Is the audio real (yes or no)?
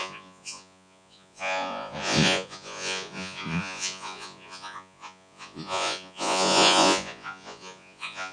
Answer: no